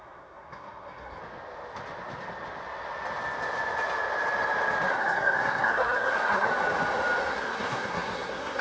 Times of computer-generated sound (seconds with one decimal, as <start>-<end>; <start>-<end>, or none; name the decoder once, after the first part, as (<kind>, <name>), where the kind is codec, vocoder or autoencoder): 0.0-1.2 (codec, SNAC); 4.9-6.5; 7.3-8.6